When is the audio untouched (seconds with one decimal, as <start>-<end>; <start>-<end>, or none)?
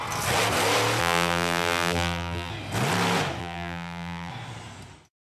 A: 0.0-1.0; 2.5-3.4; 4.3-5.2